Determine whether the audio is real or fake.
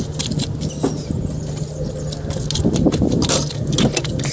real